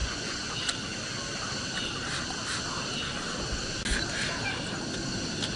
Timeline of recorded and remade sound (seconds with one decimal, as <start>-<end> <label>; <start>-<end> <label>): 0.0-0.5 remade; 0.5-5.6 recorded